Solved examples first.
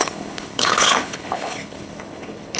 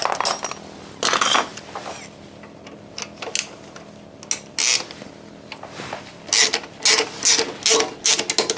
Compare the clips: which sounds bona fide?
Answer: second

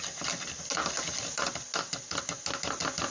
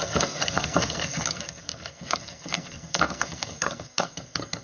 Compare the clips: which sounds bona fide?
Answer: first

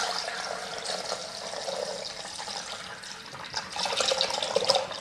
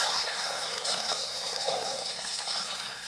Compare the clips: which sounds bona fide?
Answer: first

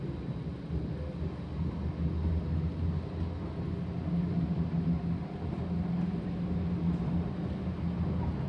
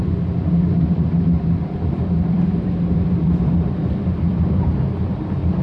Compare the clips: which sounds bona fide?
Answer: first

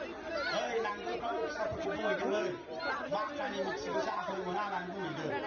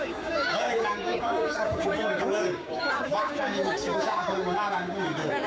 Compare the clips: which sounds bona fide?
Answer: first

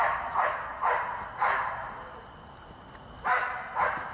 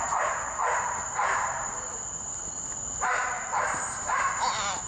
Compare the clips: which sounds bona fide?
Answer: first